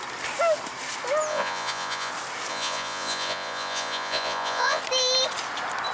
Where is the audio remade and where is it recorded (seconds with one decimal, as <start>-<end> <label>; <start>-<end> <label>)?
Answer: 0.0-1.3 recorded; 1.3-2.1 remade; 2.1-2.5 recorded; 2.5-4.8 remade; 4.8-5.9 recorded